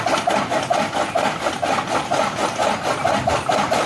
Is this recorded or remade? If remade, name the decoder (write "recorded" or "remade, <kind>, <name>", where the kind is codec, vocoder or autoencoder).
recorded